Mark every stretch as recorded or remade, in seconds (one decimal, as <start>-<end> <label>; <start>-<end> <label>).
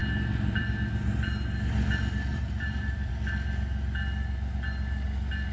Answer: 0.0-2.3 recorded; 2.3-3.1 remade; 3.1-5.5 recorded